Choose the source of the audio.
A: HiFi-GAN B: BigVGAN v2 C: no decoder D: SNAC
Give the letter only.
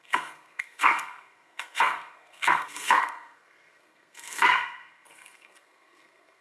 D